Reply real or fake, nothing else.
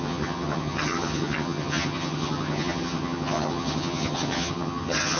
fake